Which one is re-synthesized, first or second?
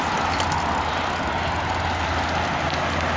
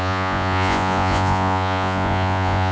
second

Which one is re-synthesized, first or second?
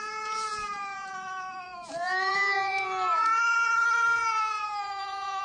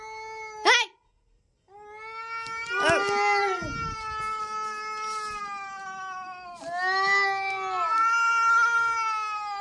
first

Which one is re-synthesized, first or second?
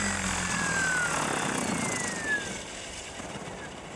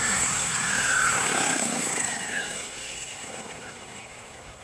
second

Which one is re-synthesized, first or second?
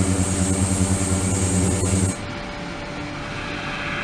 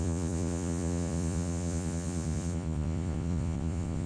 second